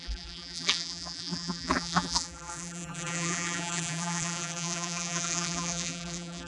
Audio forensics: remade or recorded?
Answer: remade